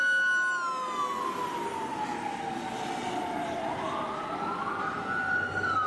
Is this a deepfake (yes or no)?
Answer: no